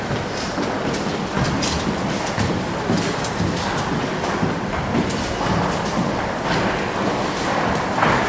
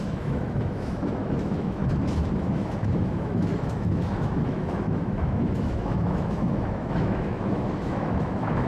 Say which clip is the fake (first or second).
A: second